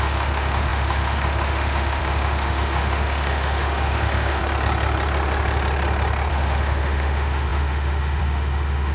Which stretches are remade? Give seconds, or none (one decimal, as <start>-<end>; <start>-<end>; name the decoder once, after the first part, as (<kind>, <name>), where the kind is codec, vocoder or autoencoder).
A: 0.0-4.4 (autoencoder, DAC-VAE); 6.3-8.9